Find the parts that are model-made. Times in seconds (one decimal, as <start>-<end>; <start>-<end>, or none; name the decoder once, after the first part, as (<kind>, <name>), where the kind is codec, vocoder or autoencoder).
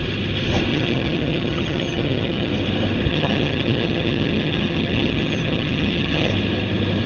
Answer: 0.7-2.5 (vocoder, HiFi-GAN); 3.1-6.3